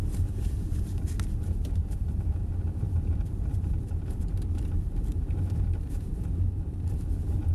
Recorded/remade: remade